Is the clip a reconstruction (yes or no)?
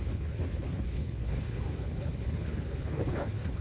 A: yes